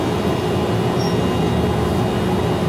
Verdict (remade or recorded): recorded